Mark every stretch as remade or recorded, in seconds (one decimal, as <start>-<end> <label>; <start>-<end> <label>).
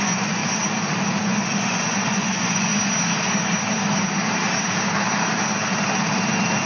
0.0-0.4 remade; 0.4-1.2 recorded; 1.2-2.7 remade; 2.7-6.7 recorded